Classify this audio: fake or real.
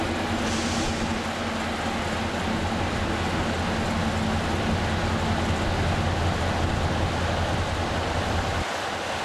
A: real